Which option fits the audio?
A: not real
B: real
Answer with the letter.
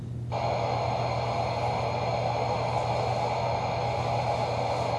B